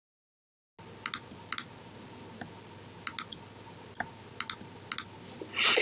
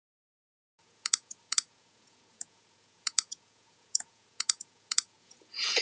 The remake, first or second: second